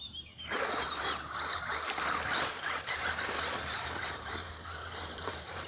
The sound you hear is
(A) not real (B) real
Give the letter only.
A